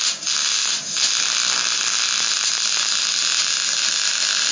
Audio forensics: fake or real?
real